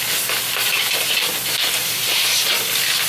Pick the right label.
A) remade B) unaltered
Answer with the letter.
B